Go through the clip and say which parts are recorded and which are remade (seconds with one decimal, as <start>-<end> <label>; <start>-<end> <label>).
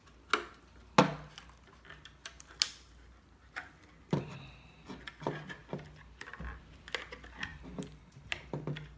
0.0-7.5 recorded; 7.5-8.1 remade; 8.1-9.0 recorded